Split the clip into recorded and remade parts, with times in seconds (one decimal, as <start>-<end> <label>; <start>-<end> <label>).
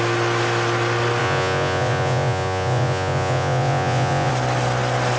0.0-1.2 recorded; 1.2-4.3 remade; 4.3-5.2 recorded